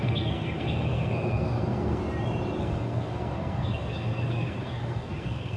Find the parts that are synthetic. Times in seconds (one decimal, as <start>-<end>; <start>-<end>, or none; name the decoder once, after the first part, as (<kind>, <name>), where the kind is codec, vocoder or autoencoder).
0.0-2.0 (codec, SNAC); 2.6-5.6